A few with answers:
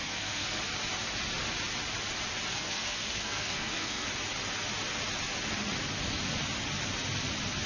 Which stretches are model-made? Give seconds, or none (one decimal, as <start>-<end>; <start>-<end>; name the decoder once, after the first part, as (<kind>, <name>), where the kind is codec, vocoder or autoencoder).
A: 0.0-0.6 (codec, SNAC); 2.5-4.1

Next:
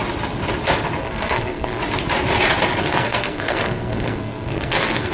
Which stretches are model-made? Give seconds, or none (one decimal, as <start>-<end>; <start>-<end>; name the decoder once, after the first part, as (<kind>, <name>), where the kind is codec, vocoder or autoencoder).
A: 1.0-1.8 (codec, SNAC); 2.8-5.1

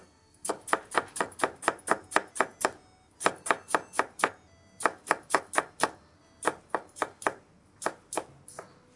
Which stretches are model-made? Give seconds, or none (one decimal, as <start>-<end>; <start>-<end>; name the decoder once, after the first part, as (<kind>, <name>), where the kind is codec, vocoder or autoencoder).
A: 0.0-0.5 (codec, SNAC)

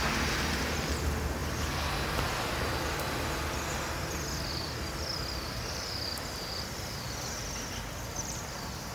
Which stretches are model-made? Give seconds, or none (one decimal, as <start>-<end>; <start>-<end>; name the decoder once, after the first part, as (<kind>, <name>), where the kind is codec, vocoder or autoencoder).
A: none

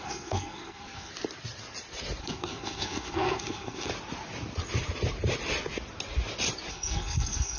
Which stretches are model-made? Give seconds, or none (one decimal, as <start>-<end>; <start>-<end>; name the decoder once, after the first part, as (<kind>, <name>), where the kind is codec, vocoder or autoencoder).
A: 0.0-1.1 (codec, SNAC); 2.2-3.9; 6.7-7.6